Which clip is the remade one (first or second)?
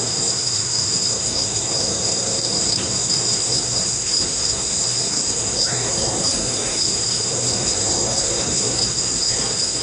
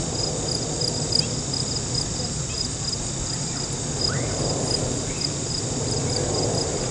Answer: first